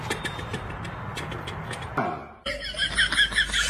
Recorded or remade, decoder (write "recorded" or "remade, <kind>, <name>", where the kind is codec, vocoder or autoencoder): recorded